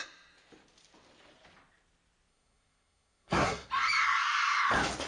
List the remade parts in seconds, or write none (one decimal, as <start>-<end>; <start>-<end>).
2.3-3.7